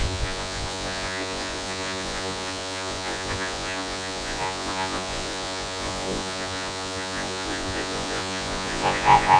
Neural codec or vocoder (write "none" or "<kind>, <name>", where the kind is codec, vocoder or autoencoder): vocoder, Vocos